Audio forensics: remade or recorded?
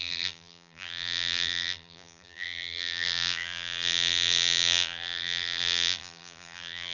remade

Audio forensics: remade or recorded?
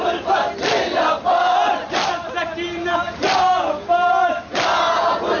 recorded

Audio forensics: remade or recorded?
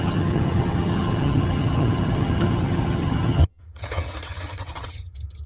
remade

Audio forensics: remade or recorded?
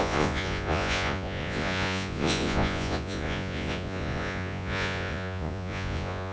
remade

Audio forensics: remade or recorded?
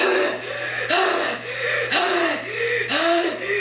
recorded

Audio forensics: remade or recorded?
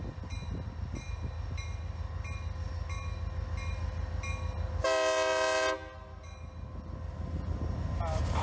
recorded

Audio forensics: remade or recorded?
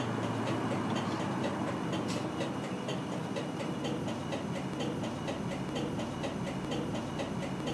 recorded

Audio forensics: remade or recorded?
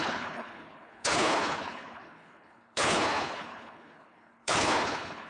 remade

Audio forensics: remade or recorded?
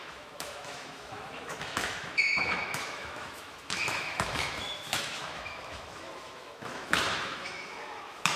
remade